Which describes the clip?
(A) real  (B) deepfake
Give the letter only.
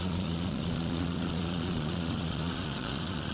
B